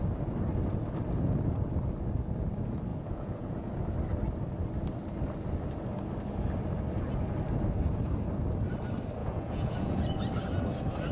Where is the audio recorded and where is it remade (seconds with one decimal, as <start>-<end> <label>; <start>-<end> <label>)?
0.0-2.9 recorded; 2.9-3.7 remade; 3.7-9.2 recorded; 9.2-10.0 remade; 10.0-11.1 recorded